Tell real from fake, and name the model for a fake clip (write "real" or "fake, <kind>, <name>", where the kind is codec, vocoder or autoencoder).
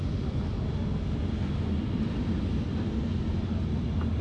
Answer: real